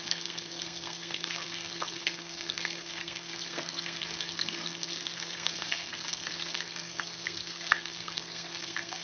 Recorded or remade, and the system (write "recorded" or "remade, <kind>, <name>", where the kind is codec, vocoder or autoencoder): remade, codec, SNAC